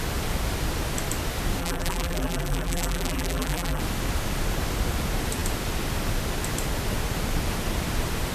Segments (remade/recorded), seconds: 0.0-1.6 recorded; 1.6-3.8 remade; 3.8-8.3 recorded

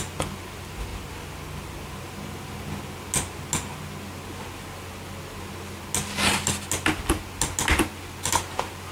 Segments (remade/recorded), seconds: 0.0-8.9 recorded

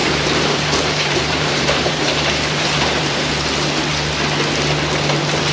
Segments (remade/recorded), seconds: 0.0-3.3 remade; 3.3-5.5 recorded